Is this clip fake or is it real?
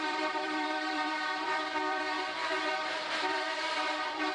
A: fake